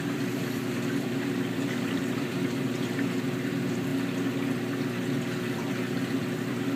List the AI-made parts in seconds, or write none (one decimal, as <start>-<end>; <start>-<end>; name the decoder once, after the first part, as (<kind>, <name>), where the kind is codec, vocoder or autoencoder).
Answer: 0.0-3.9 (vocoder, BigVGAN v2); 5.4-6.8

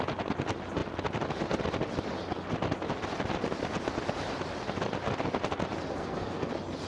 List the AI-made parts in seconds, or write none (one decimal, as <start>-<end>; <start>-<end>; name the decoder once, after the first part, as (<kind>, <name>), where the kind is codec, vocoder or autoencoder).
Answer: 5.9-6.5 (codec, SNAC)

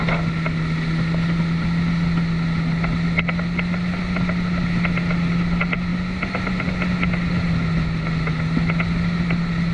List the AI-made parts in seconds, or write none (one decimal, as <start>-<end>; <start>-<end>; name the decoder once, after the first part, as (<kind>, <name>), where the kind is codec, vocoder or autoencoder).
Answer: none